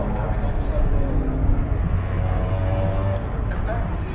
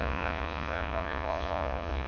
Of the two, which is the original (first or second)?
first